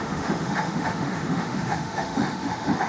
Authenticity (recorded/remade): remade